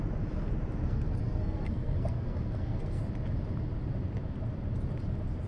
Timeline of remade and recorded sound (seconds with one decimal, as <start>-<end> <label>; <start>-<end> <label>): 0.0-0.8 recorded; 0.8-3.0 remade; 3.0-5.5 recorded